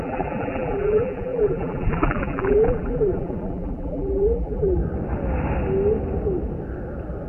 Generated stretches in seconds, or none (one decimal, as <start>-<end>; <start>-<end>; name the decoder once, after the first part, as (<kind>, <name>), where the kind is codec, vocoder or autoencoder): 0.0-4.8 (vocoder, BigVGAN v2)